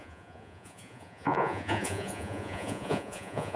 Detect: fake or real fake